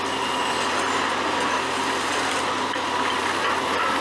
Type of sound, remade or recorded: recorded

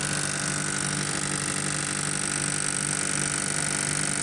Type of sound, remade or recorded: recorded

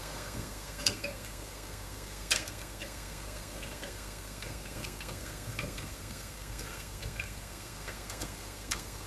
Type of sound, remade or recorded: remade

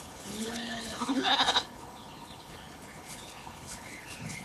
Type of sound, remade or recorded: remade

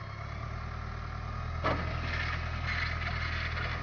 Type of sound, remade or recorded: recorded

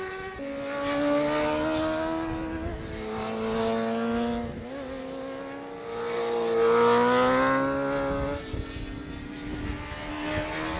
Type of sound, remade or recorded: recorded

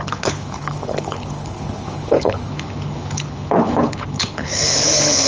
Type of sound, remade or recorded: remade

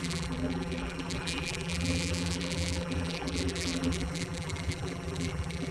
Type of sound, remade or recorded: remade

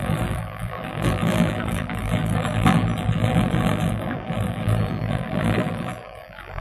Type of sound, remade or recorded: remade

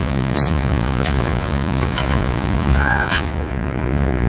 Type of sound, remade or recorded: remade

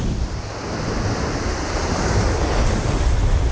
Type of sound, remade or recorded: recorded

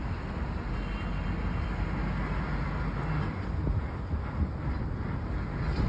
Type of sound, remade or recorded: recorded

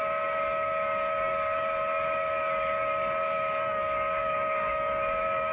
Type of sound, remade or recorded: remade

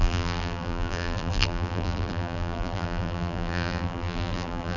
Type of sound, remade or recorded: remade